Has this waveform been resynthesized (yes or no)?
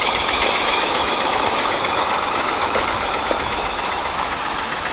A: yes